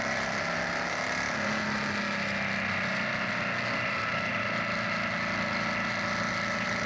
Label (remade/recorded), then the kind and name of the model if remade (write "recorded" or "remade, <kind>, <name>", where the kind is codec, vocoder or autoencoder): recorded